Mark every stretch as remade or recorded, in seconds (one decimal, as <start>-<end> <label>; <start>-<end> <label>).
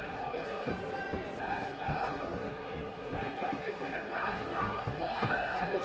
0.0-0.7 remade; 0.7-1.4 recorded; 1.4-5.8 remade